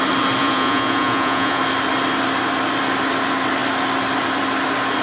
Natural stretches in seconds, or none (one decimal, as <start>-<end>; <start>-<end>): 0.0-0.4; 1.6-5.0